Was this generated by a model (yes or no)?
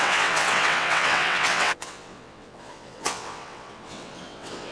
yes